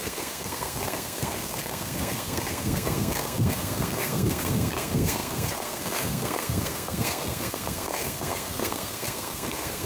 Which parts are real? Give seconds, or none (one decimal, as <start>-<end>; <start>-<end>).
none

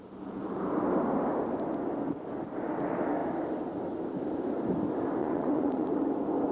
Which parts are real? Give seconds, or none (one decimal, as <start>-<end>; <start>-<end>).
0.0-5.2; 5.9-6.5

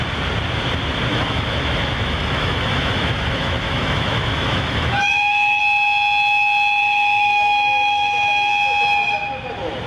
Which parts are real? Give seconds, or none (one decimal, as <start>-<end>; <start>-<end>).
0.0-1.1; 5.6-6.8; 8.5-9.9

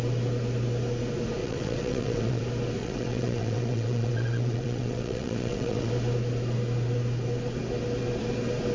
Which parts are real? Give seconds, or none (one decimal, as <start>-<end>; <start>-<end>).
0.0-1.4; 2.4-2.8; 5.9-8.7

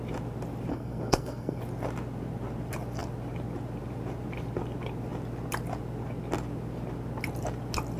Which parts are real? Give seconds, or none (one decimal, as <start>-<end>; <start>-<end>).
0.0-0.7; 1.6-8.0

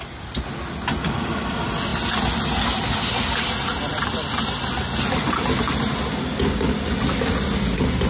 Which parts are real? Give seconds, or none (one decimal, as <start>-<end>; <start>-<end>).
0.0-8.1

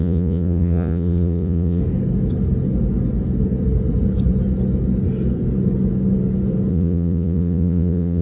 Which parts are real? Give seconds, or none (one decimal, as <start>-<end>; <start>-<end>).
1.8-6.7

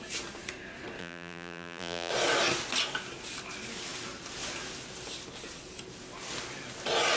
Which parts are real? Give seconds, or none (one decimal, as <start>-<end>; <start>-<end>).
0.0-1.0; 2.1-7.2